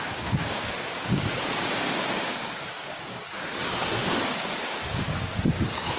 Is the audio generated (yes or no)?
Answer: yes